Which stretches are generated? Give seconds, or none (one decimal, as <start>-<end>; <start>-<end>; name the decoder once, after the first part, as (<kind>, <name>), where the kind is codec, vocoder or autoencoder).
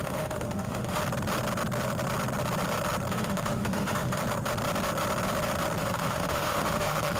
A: 0.0-1.0 (autoencoder, DAC-VAE); 3.1-4.2; 5.8-7.2